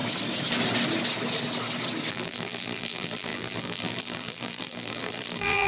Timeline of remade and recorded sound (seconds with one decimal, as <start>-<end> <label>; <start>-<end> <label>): 0.0-2.1 recorded; 2.1-5.7 remade